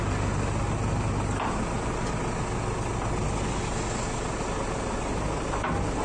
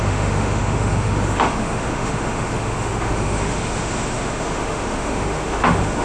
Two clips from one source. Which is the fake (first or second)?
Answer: second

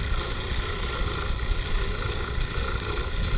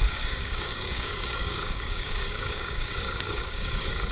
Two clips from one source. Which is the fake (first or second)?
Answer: second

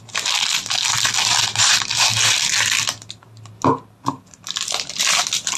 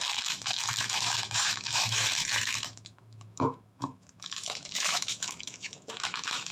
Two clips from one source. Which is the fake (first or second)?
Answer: second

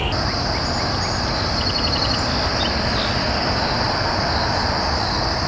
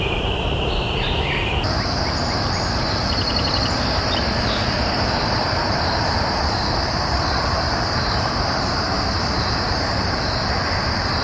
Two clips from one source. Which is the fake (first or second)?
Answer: second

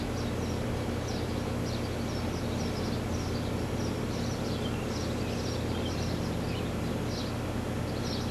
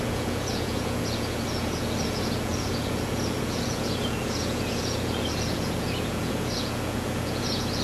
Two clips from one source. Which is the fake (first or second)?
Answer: second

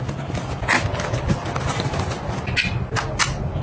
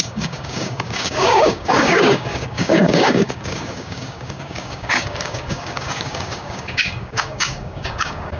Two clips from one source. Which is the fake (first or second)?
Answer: second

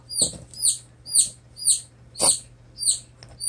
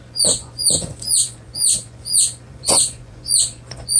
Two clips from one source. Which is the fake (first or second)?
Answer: second